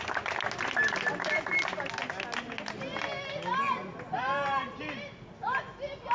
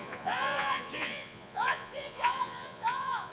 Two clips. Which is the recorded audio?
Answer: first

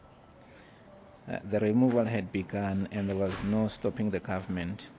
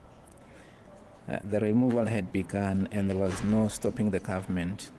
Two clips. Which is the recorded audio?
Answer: first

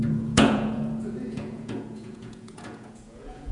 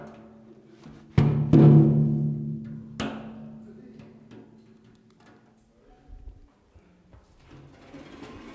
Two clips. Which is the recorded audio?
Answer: second